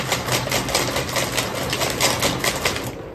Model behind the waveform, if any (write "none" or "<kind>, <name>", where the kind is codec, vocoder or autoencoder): none